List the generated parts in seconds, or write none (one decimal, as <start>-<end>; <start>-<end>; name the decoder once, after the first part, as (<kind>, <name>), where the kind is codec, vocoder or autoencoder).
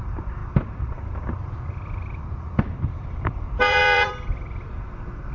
0.0-5.3 (vocoder, BigVGAN v2)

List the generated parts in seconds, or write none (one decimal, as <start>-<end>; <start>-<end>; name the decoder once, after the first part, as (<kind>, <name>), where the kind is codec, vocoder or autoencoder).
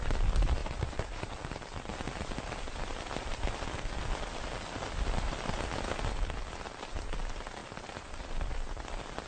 0.6-1.5 (vocoder, BigVGAN v2); 1.9-2.5; 7.6-8.9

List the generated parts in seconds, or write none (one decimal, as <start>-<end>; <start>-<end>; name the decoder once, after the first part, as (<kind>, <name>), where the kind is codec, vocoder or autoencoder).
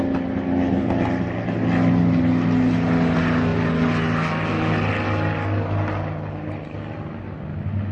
none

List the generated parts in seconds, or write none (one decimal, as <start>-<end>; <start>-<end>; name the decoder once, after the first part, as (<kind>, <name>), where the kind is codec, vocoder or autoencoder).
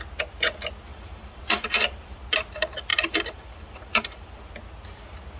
0.9-2.2 (vocoder, BigVGAN v2); 2.9-4.5